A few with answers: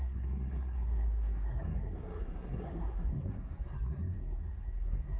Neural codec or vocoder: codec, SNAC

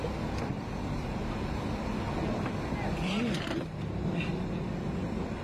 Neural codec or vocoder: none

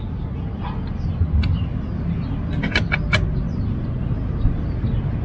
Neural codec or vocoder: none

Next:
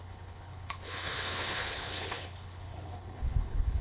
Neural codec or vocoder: codec, HILCodec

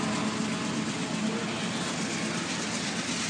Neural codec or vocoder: none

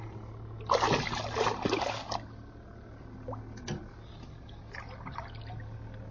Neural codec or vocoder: none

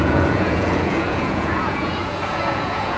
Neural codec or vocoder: vocoder, Vocos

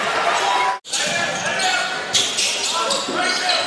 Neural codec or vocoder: none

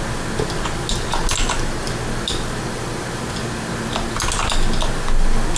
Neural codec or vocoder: none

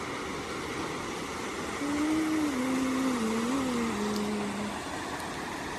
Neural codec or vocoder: none